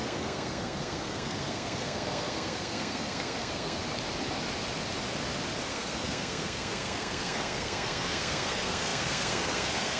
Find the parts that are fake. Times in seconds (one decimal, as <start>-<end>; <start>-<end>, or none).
0.0-3.8; 5.7-10.0